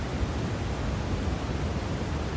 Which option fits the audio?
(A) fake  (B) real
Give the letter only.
B